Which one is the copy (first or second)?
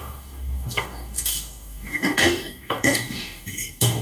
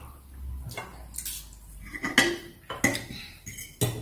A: first